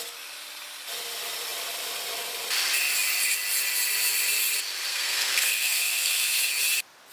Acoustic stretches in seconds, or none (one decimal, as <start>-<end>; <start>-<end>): 0.0-4.9; 6.4-7.1